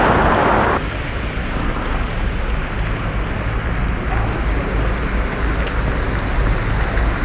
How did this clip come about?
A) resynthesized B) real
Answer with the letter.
B